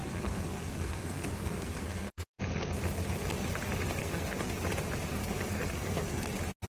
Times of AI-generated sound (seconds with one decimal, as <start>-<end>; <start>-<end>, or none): 0.0-2.4; 4.0-4.5; 5.2-6.3